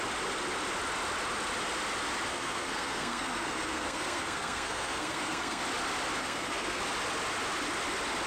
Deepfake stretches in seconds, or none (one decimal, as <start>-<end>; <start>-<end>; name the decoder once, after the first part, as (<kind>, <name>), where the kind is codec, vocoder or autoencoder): 2.3-5.6 (codec, SNAC); 6.2-6.8